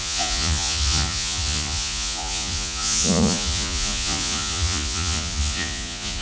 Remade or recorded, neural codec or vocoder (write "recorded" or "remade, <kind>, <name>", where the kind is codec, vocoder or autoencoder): remade, vocoder, Vocos